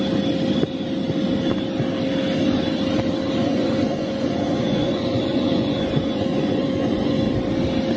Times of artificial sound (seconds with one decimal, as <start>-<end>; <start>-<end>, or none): 3.4-7.3